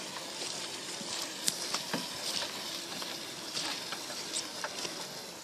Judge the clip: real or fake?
fake